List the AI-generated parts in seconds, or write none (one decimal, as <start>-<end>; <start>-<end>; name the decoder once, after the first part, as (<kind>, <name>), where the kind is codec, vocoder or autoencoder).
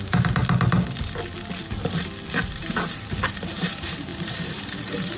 0.0-0.4 (vocoder, BigVGAN v2); 2.5-5.2